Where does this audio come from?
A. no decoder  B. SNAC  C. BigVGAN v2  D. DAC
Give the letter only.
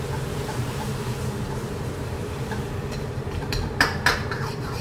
C